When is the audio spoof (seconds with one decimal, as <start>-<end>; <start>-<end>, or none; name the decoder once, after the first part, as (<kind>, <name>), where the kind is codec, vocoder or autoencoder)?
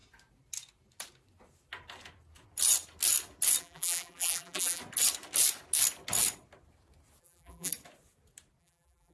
3.6-4.8 (vocoder, BigVGAN v2); 7.2-7.7; 8.6-9.1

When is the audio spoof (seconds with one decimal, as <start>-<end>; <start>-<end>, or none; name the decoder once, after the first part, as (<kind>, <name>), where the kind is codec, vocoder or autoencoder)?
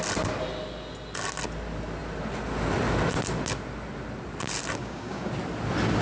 4.8-5.3 (codec, DAC)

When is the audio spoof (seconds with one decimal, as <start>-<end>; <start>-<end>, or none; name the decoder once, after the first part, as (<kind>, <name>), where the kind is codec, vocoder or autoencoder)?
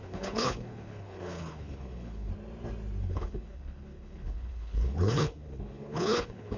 0.0-2.3 (codec, HILCodec); 3.0-6.6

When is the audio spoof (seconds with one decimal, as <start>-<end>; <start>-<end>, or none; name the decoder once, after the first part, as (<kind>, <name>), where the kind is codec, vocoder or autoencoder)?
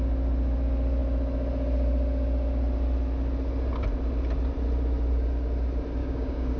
6.0-6.6 (codec, DAC)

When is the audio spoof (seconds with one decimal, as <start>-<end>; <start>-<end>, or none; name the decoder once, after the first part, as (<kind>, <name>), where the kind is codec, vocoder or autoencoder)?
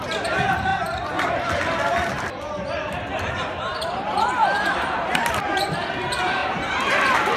0.0-0.7 (vocoder, BigVGAN v2); 3.3-7.4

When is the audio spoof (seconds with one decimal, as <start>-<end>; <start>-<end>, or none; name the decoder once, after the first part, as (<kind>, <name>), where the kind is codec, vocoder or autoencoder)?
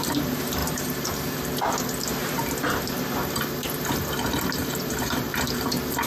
0.6-1.4 (vocoder, BigVGAN v2); 4.6-6.1